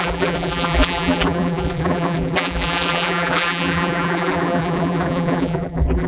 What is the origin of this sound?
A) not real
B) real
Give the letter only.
A